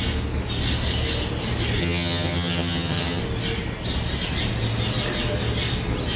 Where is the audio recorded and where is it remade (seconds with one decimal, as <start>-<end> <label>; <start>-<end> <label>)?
0.0-1.8 recorded; 1.8-3.2 remade; 3.2-6.2 recorded